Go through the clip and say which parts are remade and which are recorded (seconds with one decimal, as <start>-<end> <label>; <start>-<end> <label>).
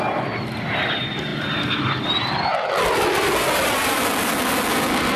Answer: 0.0-5.2 recorded